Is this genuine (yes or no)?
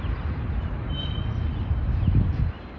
yes